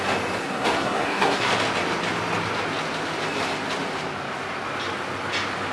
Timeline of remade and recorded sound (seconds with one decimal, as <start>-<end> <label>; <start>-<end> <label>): 0.0-0.4 recorded; 0.4-1.5 remade; 1.5-5.7 recorded